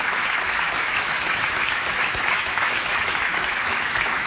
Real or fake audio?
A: fake